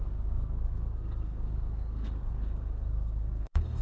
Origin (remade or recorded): remade